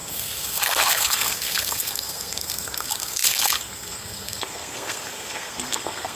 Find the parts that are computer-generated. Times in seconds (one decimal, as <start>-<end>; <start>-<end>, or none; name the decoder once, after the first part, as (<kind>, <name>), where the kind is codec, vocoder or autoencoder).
0.0-6.2 (codec, SNAC)